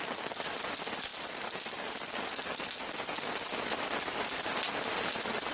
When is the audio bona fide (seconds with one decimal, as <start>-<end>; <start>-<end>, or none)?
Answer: 0.0-5.5